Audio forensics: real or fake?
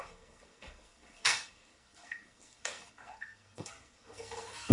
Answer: fake